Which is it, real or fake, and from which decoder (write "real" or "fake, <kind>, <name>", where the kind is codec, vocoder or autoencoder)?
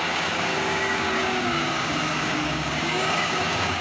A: fake, codec, DAC